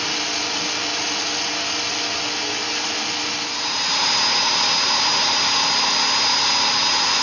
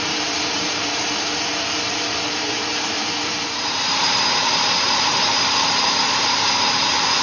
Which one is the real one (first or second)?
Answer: first